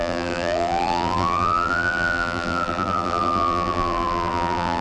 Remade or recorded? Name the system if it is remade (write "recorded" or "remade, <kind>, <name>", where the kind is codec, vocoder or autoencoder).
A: remade, vocoder, BigVGAN v2